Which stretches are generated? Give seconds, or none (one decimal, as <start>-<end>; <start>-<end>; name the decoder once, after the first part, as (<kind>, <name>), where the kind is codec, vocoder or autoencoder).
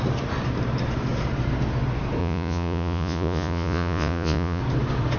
2.2-4.6 (vocoder, Vocos)